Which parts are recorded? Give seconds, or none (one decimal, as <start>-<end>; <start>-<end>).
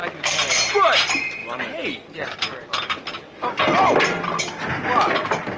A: 0.7-1.4; 4.4-5.6